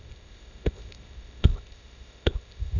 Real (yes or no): no